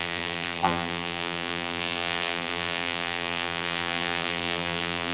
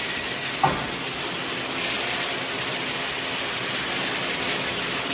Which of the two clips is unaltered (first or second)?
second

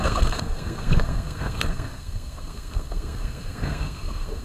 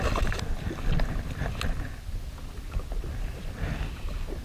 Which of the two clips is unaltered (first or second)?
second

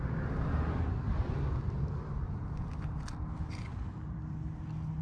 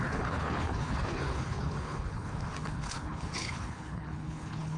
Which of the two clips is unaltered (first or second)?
first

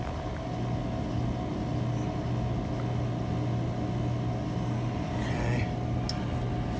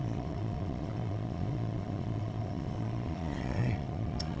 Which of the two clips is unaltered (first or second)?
first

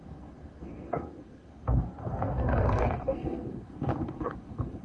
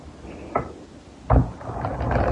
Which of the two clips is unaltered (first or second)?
second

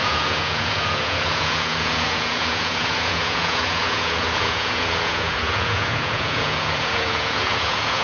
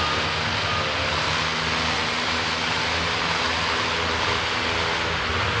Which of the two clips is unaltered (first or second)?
second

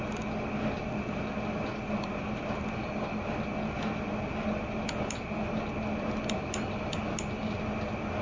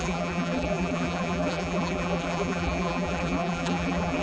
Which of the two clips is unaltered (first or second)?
first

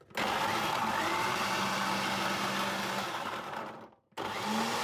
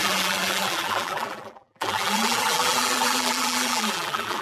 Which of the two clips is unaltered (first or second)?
first